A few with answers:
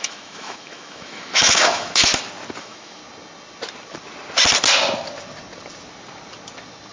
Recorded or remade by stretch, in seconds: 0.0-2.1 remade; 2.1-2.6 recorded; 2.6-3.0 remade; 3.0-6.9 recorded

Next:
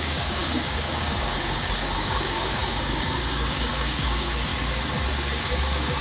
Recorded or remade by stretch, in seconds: 0.0-4.5 remade; 4.5-5.4 recorded; 5.4-6.0 remade

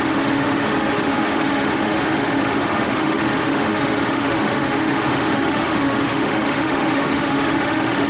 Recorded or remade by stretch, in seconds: 0.0-8.1 remade

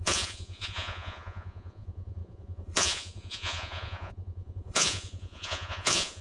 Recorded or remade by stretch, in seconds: 0.0-6.2 remade

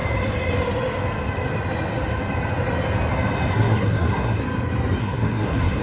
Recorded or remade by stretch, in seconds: 0.0-3.5 recorded; 3.5-4.4 remade; 4.4-5.0 recorded; 5.0-5.8 remade

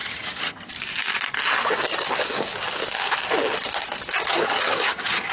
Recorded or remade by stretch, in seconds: 0.0-0.7 remade; 0.7-4.3 recorded; 4.3-5.3 remade